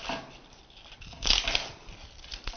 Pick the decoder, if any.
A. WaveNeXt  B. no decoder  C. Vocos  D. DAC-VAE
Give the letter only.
B